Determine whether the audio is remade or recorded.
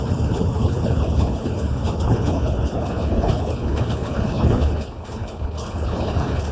remade